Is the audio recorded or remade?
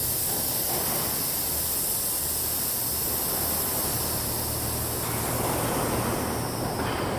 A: recorded